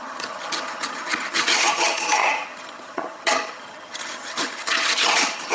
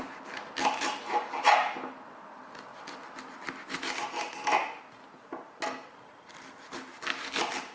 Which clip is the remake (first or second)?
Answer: first